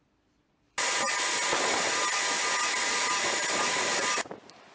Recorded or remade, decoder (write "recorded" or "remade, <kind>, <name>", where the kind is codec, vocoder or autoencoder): recorded